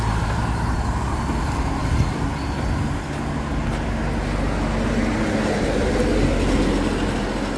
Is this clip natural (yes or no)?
yes